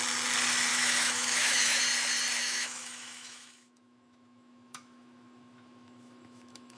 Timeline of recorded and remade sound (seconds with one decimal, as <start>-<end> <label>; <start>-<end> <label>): 0.0-0.7 recorded; 0.7-1.8 remade; 1.8-2.4 recorded; 2.4-6.8 remade